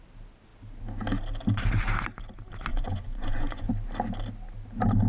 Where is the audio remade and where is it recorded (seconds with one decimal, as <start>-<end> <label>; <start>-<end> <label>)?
0.0-2.7 recorded; 2.7-3.7 remade; 3.7-5.1 recorded